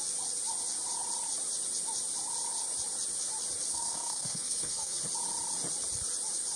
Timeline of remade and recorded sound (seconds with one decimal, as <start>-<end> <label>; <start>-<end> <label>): 0.0-3.7 recorded; 3.7-5.0 remade; 5.0-6.6 recorded